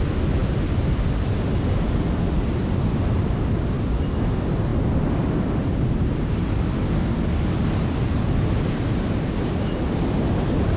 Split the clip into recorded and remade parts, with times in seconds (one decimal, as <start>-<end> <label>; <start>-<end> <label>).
0.0-10.8 recorded